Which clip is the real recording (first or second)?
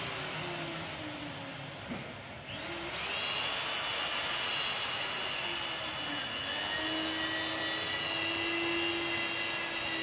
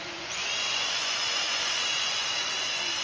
first